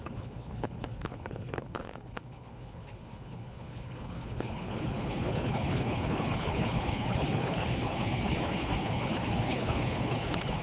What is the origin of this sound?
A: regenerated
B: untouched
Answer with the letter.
A